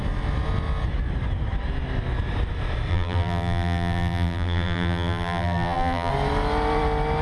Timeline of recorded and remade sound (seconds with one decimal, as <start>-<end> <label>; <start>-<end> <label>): 0.0-2.9 recorded; 2.9-6.1 remade; 6.1-7.2 recorded